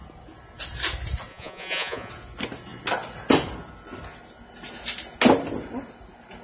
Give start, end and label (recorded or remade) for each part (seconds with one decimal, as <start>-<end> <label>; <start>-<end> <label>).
0.0-1.3 recorded; 1.3-2.1 remade; 2.1-6.4 recorded